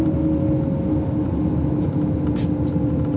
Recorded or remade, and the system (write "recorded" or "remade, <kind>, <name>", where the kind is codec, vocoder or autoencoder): recorded